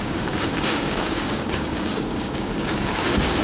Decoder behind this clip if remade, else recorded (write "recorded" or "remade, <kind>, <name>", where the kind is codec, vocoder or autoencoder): remade, codec, DAC